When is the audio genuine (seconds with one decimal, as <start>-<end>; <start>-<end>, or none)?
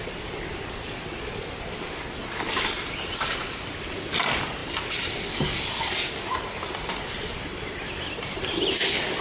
0.0-9.2